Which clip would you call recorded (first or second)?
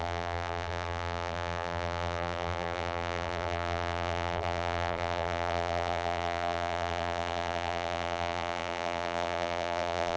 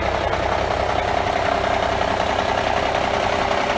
second